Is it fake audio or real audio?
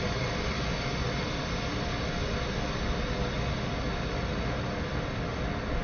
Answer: real